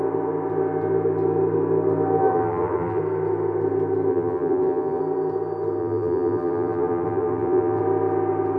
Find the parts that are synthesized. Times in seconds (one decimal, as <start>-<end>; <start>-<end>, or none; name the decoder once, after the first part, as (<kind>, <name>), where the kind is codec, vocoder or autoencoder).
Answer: 2.2-3.0 (vocoder, BigVGAN v2); 4.1-5.0; 5.8-7.8